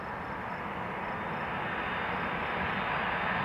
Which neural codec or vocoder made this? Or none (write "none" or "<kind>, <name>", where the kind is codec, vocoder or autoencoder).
none